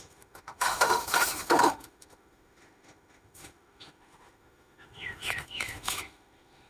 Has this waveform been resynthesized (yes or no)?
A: yes